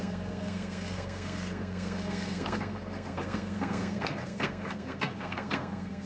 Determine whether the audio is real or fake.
fake